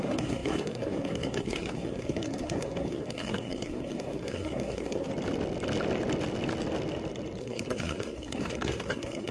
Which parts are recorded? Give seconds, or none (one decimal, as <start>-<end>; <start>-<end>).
5.1-7.4